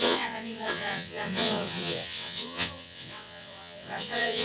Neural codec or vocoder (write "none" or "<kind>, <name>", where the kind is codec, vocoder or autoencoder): vocoder, WaveNeXt